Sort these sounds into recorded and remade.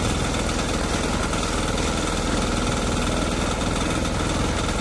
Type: recorded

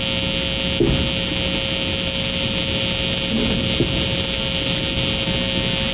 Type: recorded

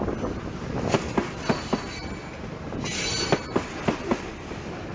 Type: recorded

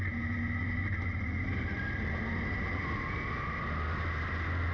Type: recorded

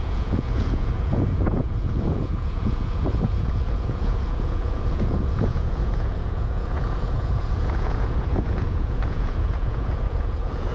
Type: remade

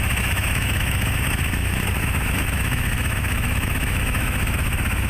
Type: remade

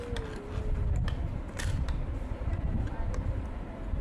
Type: recorded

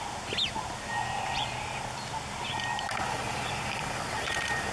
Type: recorded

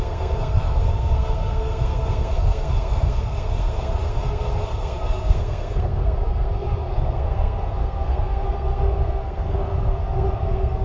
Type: remade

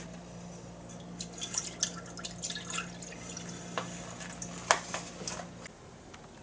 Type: recorded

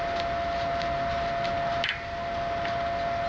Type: recorded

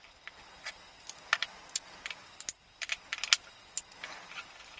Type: recorded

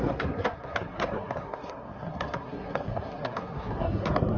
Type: remade